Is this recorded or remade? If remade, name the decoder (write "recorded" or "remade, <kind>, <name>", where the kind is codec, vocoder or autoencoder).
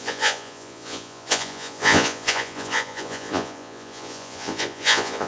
remade, vocoder, Vocos